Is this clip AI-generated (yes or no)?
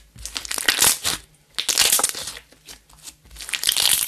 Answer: no